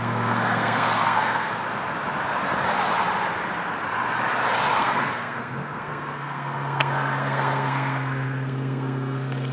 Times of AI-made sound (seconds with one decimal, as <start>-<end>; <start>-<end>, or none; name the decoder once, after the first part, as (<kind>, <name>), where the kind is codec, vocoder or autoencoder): 0.0-1.5 (codec, SNAC); 4.8-9.5